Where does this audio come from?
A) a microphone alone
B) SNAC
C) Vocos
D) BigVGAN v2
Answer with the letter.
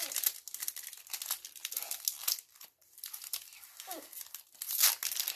A